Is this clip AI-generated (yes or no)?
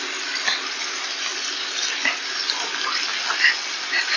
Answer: no